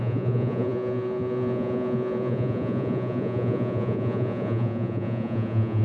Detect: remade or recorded remade